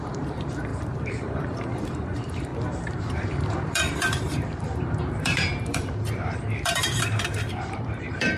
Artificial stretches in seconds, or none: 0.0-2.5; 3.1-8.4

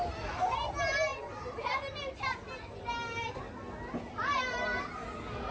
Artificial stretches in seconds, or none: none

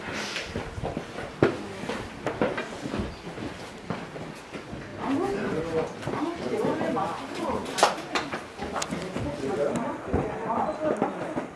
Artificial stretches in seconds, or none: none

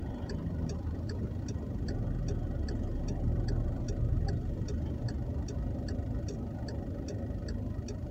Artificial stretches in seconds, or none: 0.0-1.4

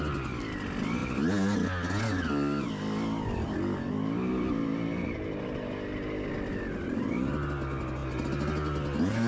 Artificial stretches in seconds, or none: none

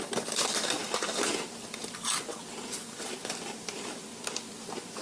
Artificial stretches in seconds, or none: 0.0-0.8; 3.3-4.1